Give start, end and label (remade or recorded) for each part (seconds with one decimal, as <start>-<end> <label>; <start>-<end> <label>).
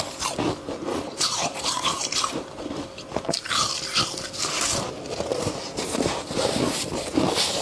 0.0-0.9 recorded; 0.9-2.0 remade; 2.0-7.6 recorded